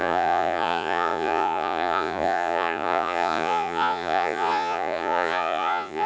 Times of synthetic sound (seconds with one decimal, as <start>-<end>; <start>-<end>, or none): 0.0-6.1